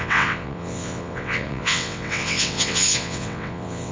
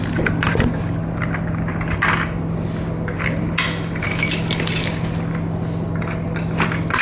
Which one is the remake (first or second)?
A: first